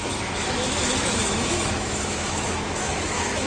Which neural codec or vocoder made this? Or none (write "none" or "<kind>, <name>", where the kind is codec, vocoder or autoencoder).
autoencoder, DAC-VAE